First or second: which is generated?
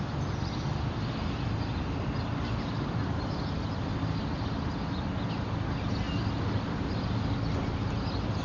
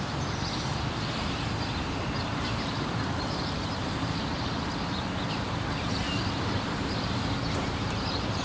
second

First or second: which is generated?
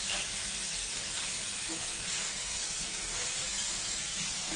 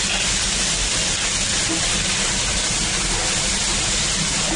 first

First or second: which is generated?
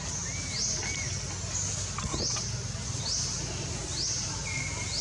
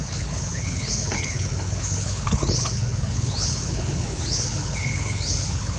second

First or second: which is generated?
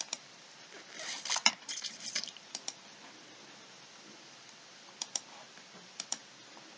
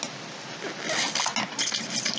first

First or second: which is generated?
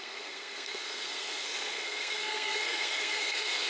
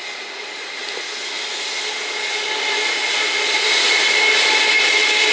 first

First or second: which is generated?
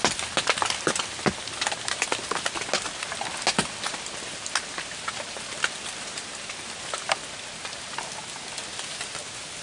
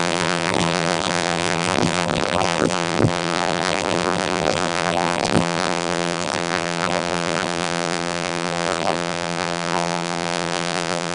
second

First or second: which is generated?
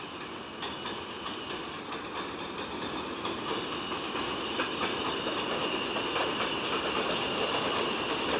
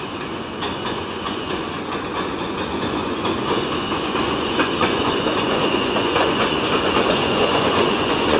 second